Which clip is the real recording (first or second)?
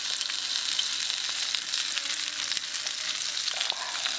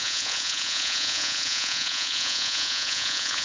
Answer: first